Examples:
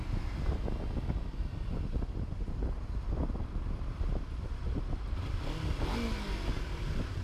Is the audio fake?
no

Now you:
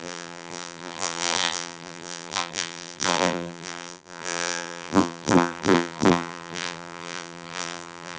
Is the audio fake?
yes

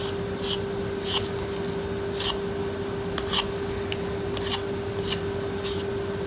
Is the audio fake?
no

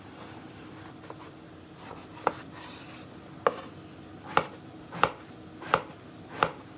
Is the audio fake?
no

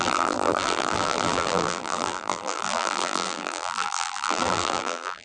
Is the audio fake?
yes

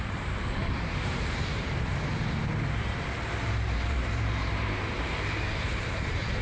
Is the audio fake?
yes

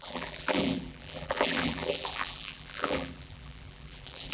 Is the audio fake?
yes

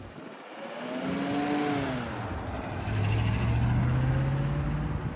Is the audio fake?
no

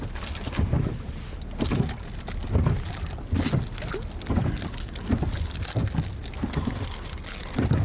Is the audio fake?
no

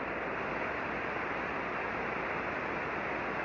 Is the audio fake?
yes